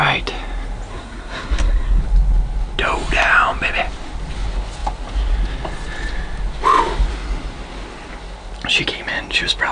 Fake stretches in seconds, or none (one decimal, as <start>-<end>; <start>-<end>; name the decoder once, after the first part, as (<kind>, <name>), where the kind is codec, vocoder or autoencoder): 0.9-2.0 (codec, SNAC)